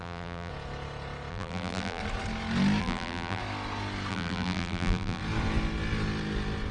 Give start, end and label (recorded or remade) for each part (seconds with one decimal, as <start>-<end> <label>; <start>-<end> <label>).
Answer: 0.0-0.5 remade; 0.5-1.3 recorded; 1.3-2.0 remade; 2.0-2.8 recorded; 2.8-3.4 remade; 3.4-4.1 recorded; 4.1-5.2 remade; 5.2-6.7 recorded